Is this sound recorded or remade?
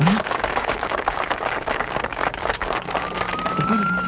remade